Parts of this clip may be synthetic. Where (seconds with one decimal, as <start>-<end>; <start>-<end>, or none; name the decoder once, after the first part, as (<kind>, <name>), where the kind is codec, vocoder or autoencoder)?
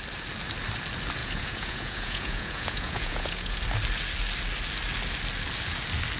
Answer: 1.2-3.6 (vocoder, Vocos)